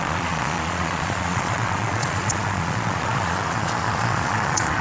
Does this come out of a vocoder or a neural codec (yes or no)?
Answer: yes